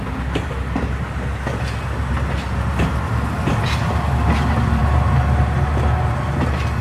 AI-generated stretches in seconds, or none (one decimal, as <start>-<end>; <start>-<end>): none